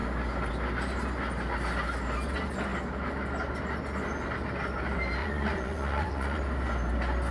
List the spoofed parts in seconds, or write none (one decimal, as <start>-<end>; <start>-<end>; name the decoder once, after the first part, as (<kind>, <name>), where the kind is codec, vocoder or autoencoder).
5.2-6.4 (vocoder, Vocos)